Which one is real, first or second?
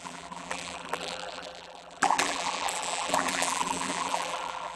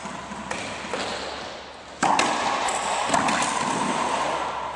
second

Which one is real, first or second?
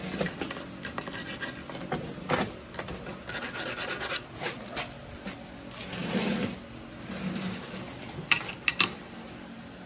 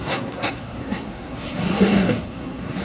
first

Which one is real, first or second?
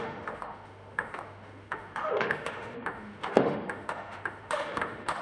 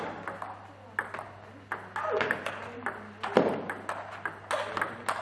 second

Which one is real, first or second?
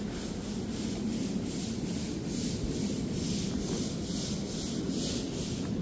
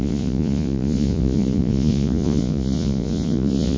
first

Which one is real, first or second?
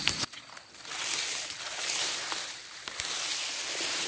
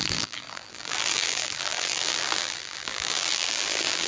first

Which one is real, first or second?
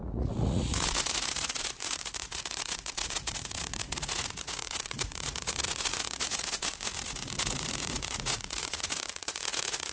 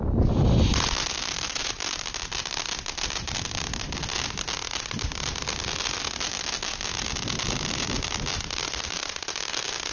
second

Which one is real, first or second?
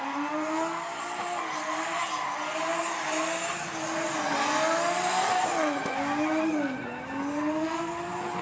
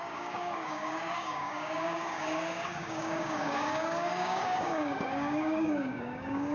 first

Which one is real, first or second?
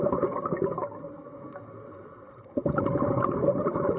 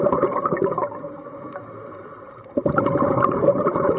first